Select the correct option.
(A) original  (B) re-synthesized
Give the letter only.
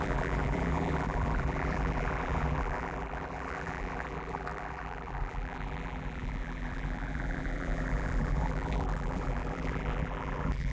B